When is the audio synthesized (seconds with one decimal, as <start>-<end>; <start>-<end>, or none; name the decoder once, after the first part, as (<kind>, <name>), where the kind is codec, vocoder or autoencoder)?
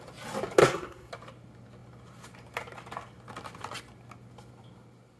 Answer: 0.6-1.1 (codec, SNAC)